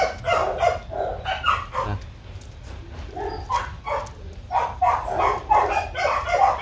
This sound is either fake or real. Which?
real